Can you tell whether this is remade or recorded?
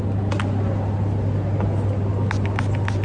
recorded